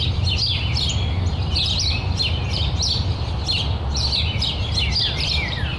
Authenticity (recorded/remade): recorded